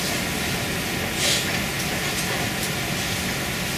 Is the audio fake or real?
real